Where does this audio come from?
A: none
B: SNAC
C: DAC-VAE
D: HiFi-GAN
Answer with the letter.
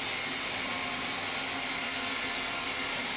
A